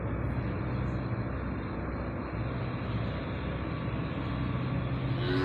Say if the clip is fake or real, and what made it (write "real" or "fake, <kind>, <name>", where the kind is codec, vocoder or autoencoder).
real